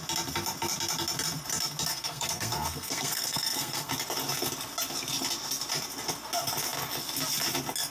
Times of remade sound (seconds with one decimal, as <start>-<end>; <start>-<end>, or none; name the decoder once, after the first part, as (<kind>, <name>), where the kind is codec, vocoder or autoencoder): 1.9-3.9 (codec, SNAC)